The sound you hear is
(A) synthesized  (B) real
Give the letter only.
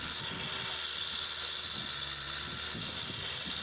B